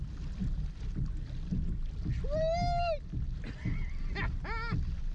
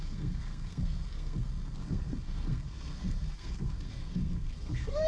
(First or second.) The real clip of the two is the first